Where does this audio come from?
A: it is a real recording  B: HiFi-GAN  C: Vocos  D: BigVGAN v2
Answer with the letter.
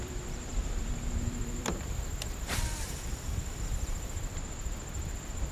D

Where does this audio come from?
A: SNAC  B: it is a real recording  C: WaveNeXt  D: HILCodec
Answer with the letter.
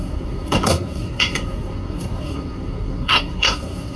A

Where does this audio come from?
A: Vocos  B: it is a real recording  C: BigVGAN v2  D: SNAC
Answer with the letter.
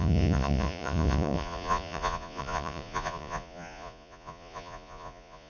A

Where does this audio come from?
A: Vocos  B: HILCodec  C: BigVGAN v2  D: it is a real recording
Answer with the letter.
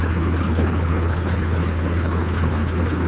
B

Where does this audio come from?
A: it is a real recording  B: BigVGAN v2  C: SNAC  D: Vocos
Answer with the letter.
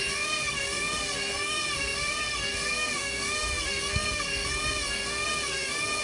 C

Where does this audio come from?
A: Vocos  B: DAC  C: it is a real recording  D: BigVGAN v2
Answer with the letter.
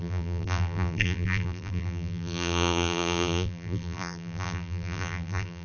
D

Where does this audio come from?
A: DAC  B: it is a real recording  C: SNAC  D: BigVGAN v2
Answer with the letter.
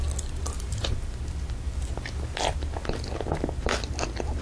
B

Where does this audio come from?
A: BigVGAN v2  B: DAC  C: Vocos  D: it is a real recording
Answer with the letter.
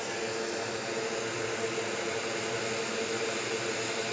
D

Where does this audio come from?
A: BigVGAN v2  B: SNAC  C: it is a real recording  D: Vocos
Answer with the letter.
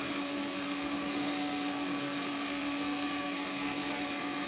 B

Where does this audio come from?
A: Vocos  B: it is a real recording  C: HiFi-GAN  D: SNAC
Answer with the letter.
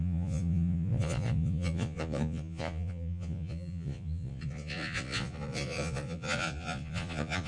A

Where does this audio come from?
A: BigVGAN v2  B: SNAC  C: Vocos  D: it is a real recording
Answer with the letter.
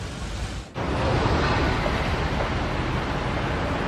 D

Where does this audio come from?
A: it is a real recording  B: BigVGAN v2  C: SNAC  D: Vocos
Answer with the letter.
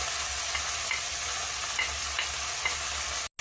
A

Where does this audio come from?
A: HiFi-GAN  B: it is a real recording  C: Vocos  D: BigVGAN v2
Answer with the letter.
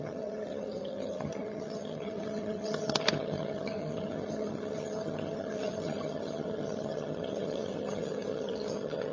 A